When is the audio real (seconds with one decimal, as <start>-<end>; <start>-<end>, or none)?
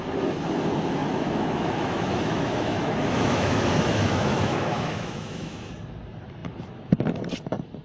0.0-1.0; 5.7-7.8